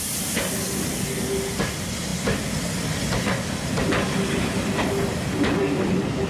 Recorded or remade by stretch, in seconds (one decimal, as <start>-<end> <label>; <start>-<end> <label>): 0.0-6.3 recorded